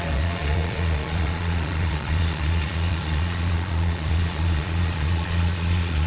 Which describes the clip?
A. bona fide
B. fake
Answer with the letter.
B